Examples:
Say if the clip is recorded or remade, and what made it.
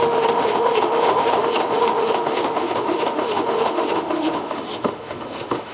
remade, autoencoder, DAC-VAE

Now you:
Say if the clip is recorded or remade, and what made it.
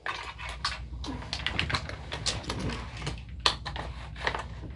recorded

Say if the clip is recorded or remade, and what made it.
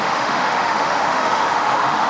remade, autoencoder, DAC-VAE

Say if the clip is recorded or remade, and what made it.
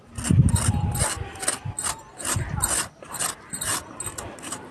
recorded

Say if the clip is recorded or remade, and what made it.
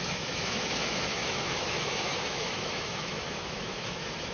remade, autoencoder, DAC-VAE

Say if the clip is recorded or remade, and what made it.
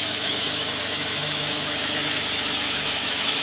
remade, autoencoder, DAC-VAE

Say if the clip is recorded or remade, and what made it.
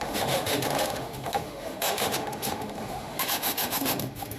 remade, autoencoder, DAC-VAE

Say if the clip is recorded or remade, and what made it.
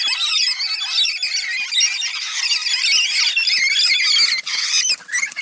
recorded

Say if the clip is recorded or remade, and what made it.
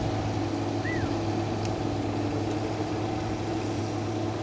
recorded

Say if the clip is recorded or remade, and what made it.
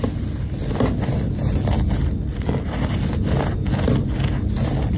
recorded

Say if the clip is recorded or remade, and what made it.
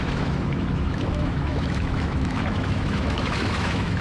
remade, autoencoder, DAC-VAE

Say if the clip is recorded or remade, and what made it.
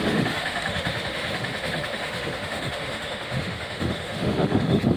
remade, autoencoder, DAC-VAE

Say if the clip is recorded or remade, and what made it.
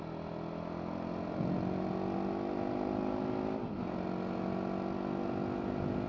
recorded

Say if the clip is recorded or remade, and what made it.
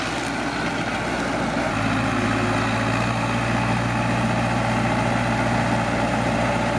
recorded